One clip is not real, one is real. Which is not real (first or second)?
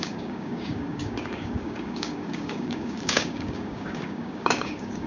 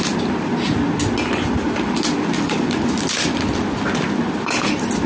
first